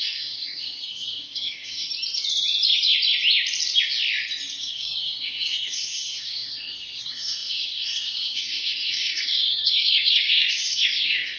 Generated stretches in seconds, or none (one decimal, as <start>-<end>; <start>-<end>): 0.0-1.9; 4.6-11.4

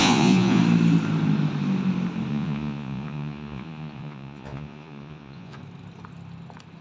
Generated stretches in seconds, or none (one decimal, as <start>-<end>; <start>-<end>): 0.0-0.6; 2.3-5.6

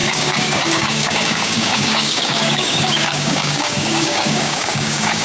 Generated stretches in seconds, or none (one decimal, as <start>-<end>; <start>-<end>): 0.0-5.2

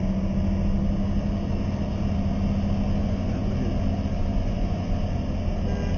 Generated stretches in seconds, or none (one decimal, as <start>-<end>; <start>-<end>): 3.0-3.5; 4.3-4.9